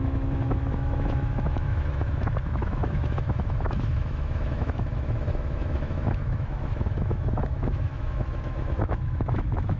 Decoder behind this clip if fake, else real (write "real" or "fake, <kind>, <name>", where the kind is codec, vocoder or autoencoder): fake, autoencoder, DAC-VAE